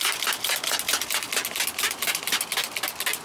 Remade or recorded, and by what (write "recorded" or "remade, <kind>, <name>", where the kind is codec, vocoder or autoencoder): recorded